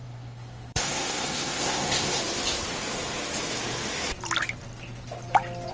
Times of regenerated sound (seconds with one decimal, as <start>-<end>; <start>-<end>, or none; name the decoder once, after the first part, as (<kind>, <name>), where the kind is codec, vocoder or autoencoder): 0.0-2.2 (codec, SNAC)